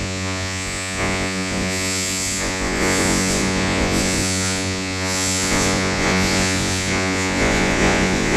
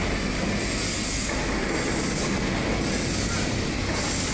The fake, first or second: first